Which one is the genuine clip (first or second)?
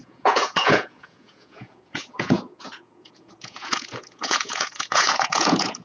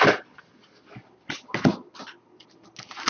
second